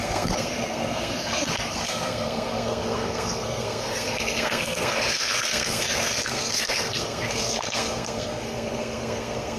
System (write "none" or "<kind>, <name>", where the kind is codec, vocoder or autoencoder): codec, SNAC